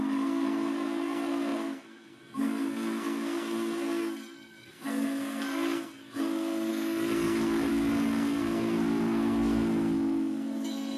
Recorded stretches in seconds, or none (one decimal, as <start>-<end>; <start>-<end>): none